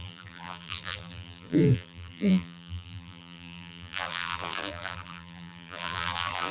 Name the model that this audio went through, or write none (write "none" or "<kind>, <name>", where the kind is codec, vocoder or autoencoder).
vocoder, BigVGAN v2